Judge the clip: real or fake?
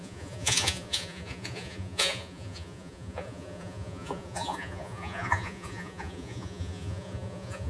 fake